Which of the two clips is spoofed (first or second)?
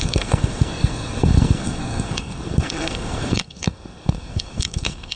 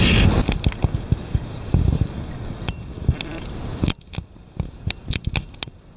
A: first